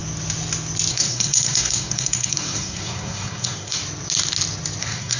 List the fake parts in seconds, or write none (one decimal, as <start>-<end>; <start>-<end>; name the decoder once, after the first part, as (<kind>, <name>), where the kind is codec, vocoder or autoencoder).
0.9-3.8 (codec, SNAC); 4.8-5.2